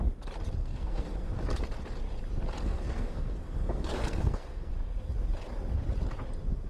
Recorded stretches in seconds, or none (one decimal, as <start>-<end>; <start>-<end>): 0.0-0.6; 1.3-2.7; 4.7-6.7